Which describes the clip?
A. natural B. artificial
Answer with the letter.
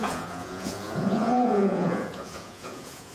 B